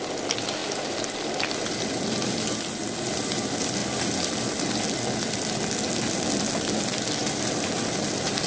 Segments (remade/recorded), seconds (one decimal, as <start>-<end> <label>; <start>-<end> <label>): 0.0-0.6 recorded; 0.6-3.4 remade; 3.4-3.8 recorded; 3.8-4.7 remade; 4.7-7.2 recorded; 7.2-8.5 remade